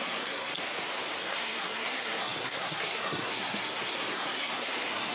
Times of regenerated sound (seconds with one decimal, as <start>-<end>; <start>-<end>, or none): 0.0-0.5; 1.2-5.1